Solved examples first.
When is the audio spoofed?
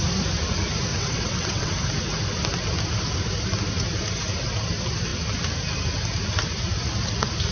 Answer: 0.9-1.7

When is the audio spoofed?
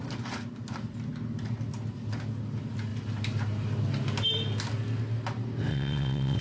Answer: 5.7-6.4